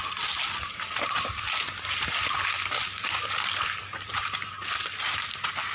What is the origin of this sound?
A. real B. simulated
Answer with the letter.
A